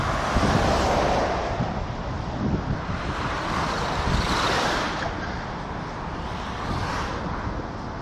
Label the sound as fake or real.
real